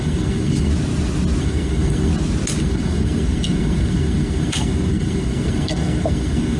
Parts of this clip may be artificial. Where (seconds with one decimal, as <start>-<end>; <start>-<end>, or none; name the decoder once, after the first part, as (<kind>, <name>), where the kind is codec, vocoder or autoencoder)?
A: 0.0-0.7 (codec, SNAC); 1.4-2.1; 2.6-6.6

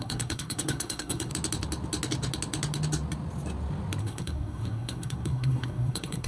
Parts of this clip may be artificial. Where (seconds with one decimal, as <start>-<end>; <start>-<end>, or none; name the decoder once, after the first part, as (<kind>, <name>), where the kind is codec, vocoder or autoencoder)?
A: 0.0-1.3 (codec, SNAC); 4.0-6.3

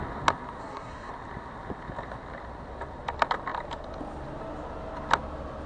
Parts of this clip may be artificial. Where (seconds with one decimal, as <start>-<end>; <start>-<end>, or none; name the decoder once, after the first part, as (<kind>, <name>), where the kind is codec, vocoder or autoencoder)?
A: 0.6-1.1 (codec, SNAC)

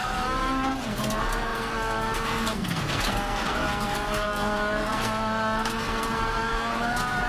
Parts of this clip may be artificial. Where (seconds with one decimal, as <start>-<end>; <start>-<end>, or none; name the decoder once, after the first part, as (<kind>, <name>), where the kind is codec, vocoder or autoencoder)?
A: 0.0-7.3 (codec, SNAC)